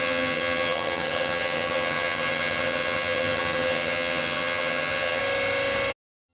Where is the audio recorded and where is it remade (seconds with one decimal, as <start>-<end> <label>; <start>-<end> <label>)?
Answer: 0.0-5.2 remade; 5.2-6.3 recorded